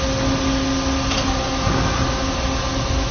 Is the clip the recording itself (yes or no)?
yes